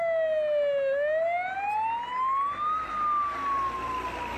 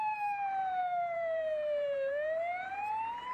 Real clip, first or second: first